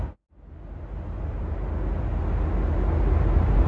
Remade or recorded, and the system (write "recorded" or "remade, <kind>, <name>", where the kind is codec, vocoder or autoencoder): recorded